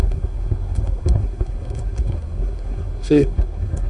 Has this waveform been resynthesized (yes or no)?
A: yes